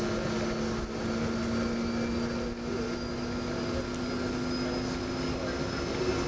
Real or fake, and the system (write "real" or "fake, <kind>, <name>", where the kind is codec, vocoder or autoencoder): real